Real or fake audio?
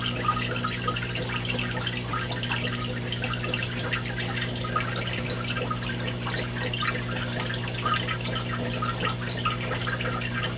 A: real